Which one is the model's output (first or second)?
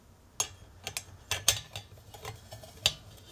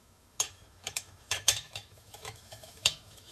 second